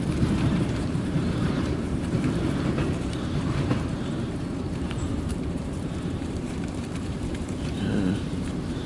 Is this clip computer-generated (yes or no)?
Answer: yes